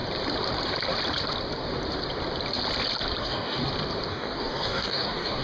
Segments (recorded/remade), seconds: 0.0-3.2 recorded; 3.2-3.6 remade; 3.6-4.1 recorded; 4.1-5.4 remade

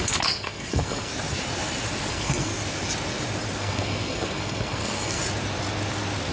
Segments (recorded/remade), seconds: 0.0-1.1 remade; 1.1-2.1 recorded; 2.1-2.5 remade; 2.5-3.6 recorded; 3.6-5.2 remade; 5.2-6.3 recorded

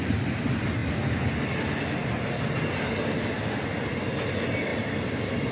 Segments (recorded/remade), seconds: 0.0-5.5 recorded

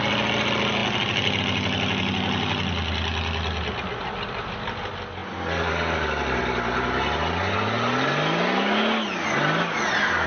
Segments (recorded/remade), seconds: 0.0-10.3 recorded

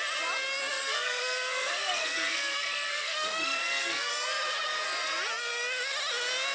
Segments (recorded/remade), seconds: 0.0-0.7 recorded; 0.7-4.1 remade; 4.1-6.5 recorded

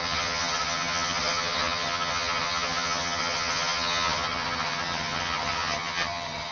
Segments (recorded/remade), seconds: 0.0-6.5 remade

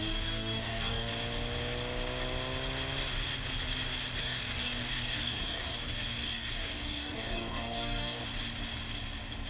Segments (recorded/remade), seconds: 0.0-1.1 remade; 1.1-4.2 recorded; 4.2-8.2 remade; 8.2-9.5 recorded